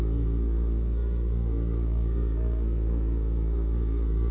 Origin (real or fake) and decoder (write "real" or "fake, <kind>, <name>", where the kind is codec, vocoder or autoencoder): fake, codec, SNAC